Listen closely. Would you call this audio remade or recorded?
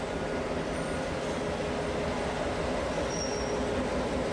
recorded